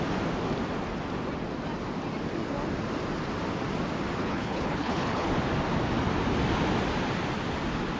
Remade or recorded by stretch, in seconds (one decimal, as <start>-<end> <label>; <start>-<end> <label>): 0.0-4.2 recorded; 4.2-5.3 remade; 5.3-8.0 recorded